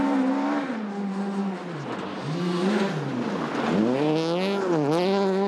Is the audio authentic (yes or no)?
yes